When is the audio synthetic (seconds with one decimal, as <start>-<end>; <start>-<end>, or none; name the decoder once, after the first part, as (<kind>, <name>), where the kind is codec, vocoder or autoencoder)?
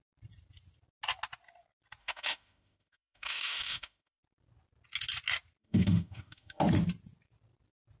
2.0-4.2 (autoencoder, DAC-VAE); 5.6-6.6